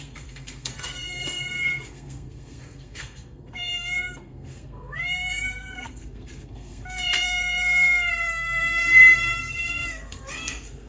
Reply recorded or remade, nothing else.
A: remade